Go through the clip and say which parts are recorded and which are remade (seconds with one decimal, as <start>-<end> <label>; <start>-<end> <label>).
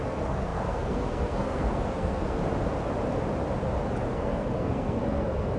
0.0-2.4 remade; 2.4-4.1 recorded; 4.1-5.6 remade